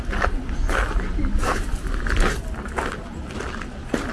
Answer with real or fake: real